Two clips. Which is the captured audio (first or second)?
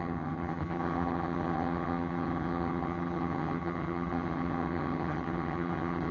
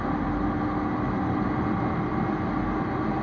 second